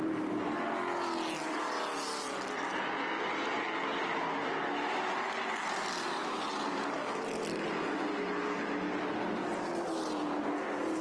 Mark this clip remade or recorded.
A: recorded